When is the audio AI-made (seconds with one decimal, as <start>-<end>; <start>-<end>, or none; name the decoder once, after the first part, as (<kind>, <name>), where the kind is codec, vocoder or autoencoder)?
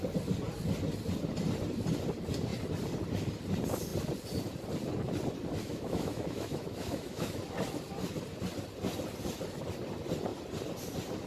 5.6-7.4 (autoencoder, DAC-VAE)